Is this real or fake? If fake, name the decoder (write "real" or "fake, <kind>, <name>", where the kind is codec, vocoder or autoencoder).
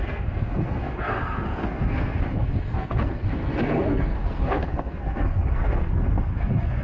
fake, codec, SNAC